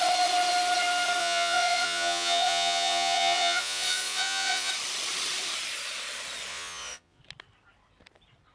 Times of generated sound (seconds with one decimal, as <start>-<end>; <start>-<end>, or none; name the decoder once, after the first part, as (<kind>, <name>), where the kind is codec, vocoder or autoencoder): 1.2-4.7 (vocoder, Vocos); 6.5-7.2